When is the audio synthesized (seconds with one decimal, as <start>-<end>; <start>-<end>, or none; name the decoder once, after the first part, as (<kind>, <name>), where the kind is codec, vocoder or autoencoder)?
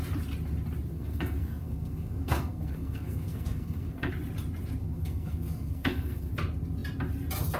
0.9-4.1 (codec, SNAC); 4.8-6.3